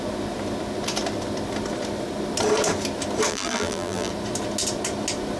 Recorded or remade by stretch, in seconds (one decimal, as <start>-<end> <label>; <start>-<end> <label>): 0.0-3.3 recorded; 3.3-4.1 remade; 4.1-5.4 recorded